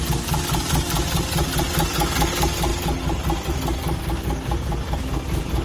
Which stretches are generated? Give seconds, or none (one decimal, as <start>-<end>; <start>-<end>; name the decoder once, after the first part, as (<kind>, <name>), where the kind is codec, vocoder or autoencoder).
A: none